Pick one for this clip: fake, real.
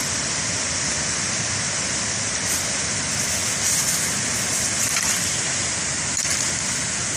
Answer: real